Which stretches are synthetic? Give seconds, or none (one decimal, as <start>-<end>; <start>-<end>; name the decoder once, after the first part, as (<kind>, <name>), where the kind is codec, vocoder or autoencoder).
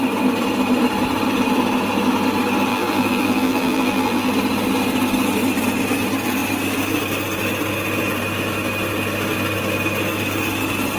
2.7-4.3 (vocoder, BigVGAN v2)